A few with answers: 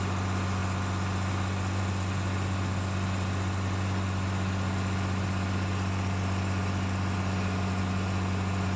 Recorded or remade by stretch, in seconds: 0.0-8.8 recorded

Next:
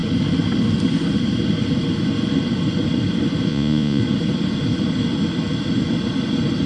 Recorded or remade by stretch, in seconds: 0.0-3.5 recorded; 3.5-4.0 remade; 4.0-6.7 recorded

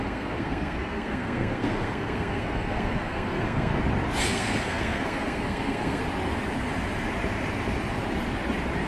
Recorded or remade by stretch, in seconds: 0.0-3.7 remade; 3.7-4.3 recorded; 4.3-6.0 remade; 6.0-8.9 recorded

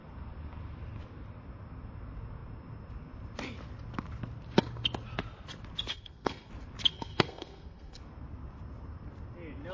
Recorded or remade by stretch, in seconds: 0.0-5.9 recorded; 5.9-6.5 remade; 6.5-6.9 recorded; 6.9-8.0 remade; 8.0-9.7 recorded

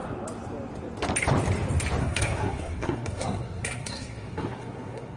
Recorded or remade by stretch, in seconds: 0.0-2.0 recorded; 2.0-5.2 remade

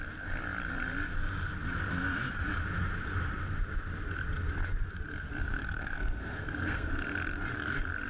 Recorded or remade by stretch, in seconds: 0.0-5.6 recorded; 5.6-6.9 remade; 6.9-8.1 recorded

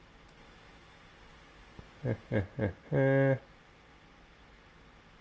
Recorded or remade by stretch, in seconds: 0.0-5.2 recorded

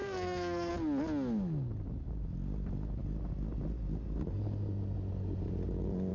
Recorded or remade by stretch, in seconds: 0.0-0.7 remade; 0.7-6.1 recorded